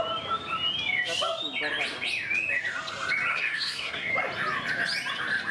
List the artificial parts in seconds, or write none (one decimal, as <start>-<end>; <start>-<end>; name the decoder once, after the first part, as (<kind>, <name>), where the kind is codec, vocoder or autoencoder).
3.3-4.1 (codec, SNAC)